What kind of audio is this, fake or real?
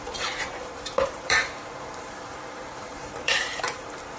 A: fake